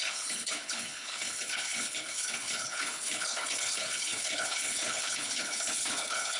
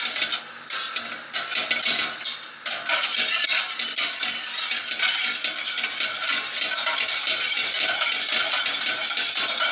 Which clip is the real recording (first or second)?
second